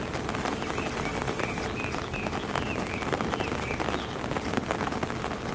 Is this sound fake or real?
real